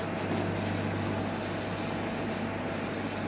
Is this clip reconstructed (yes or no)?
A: no